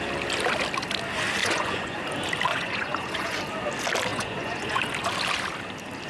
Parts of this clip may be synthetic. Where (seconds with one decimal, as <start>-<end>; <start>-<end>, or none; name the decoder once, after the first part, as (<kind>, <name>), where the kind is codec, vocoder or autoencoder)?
1.4-2.0 (vocoder, Vocos); 2.5-3.4; 4.1-4.8